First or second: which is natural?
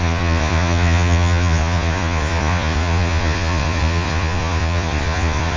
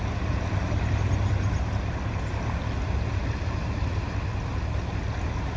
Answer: second